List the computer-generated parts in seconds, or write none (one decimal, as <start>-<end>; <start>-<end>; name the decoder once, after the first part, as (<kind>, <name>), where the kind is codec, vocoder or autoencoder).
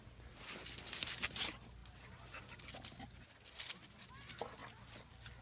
4.6-5.4 (vocoder, BigVGAN v2)